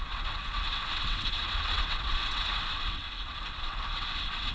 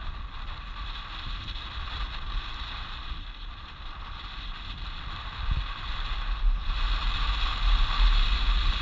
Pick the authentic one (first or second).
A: second